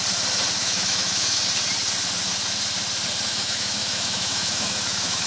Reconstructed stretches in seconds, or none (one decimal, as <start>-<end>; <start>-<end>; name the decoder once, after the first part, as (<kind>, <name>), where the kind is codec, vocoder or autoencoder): 0.6-1.4 (autoencoder, DAC-VAE); 3.3-5.3